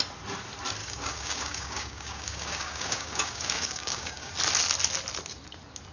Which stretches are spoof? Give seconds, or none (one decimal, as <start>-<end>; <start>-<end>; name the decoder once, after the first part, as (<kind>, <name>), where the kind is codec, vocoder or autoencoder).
0.8-4.3 (codec, DAC)